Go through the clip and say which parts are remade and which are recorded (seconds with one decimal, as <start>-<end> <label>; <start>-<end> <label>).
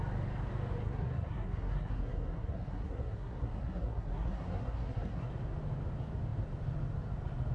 0.0-0.8 recorded; 0.8-5.3 remade; 5.3-7.5 recorded